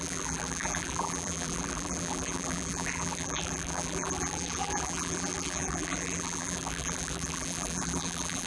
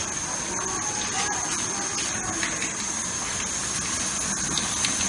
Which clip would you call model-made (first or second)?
first